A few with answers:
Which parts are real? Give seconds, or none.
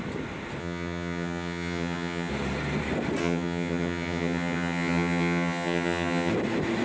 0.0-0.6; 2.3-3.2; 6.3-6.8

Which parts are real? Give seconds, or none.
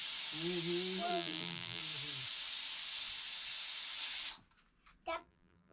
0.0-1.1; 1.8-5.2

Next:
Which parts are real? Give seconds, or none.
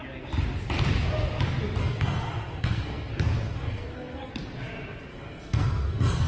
0.0-1.8; 3.1-3.5; 4.3-5.1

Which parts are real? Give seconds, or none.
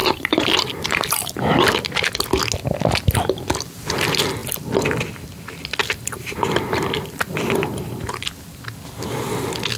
1.3-5.8; 8.0-9.8